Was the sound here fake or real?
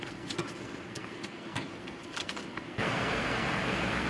fake